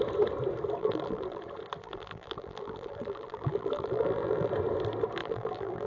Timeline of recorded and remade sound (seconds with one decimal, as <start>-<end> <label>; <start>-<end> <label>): 0.0-0.8 recorded; 0.8-1.4 remade; 1.4-1.8 recorded; 1.8-4.5 remade; 4.5-5.2 recorded; 5.2-5.9 remade